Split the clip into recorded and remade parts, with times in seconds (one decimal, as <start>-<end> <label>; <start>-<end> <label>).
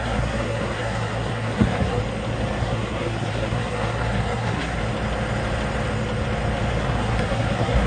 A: 0.0-2.0 remade; 2.0-2.6 recorded; 2.6-4.8 remade; 4.8-6.7 recorded; 6.7-7.9 remade